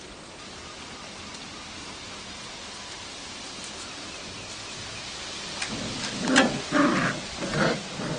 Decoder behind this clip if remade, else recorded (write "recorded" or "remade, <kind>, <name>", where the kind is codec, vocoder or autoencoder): recorded